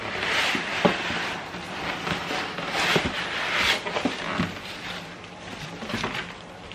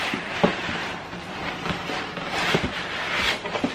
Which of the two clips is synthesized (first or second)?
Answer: second